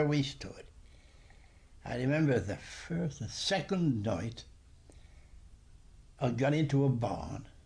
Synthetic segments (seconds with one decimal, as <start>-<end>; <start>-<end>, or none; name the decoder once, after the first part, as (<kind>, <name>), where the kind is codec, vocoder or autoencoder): none